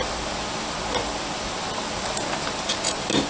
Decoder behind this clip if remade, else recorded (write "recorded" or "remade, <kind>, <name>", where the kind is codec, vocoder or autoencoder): recorded